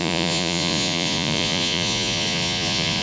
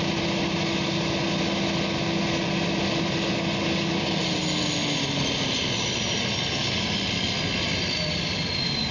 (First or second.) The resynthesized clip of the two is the first